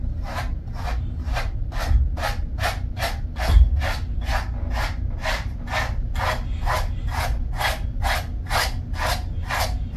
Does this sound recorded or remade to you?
recorded